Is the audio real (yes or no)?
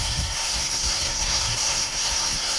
no